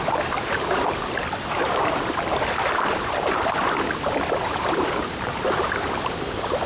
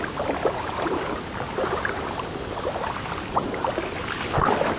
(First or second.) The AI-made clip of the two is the first